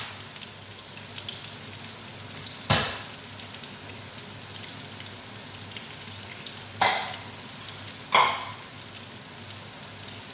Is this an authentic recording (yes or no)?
yes